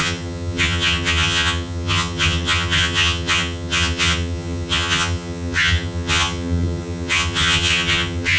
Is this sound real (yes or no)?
no